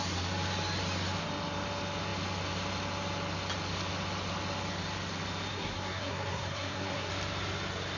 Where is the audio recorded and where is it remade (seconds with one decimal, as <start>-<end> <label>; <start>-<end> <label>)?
0.0-5.5 recorded; 5.5-7.1 remade; 7.1-8.0 recorded